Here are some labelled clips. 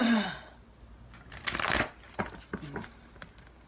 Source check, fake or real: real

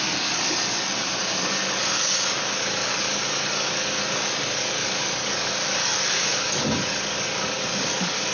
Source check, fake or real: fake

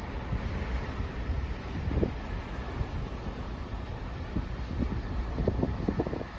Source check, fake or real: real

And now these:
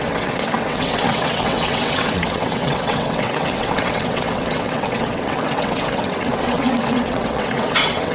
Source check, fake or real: fake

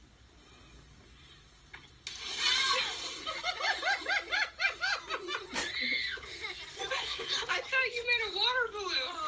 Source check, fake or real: real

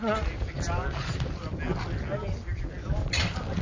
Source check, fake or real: real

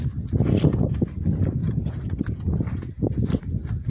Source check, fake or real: real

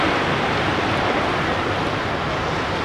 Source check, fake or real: real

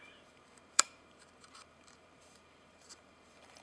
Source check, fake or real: fake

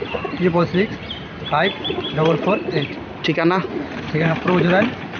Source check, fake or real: fake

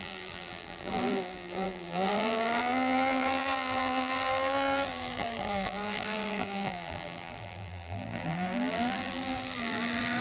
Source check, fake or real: fake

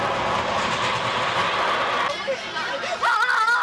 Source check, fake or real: real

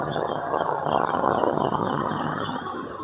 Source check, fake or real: fake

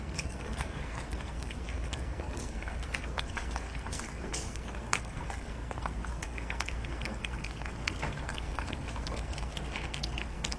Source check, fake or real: fake